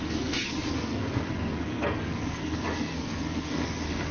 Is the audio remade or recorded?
remade